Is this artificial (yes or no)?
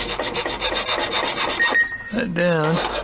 no